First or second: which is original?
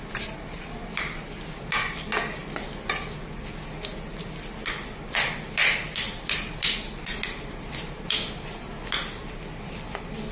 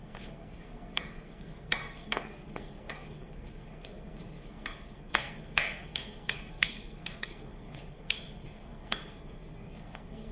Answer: first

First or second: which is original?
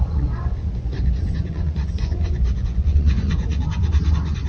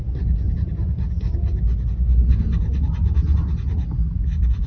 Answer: second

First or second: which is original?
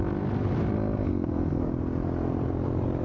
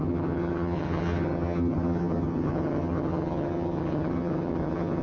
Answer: first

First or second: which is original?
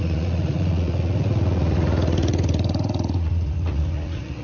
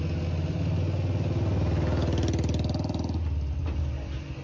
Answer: second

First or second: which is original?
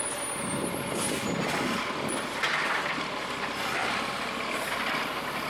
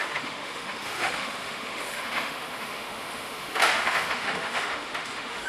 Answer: first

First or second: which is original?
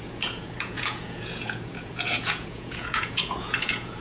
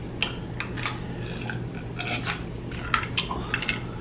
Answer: second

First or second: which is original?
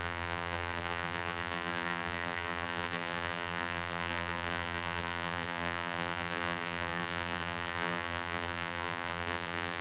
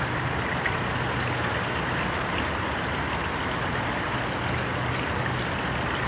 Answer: second